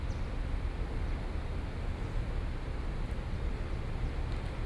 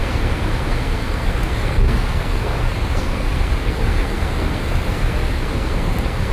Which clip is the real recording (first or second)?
first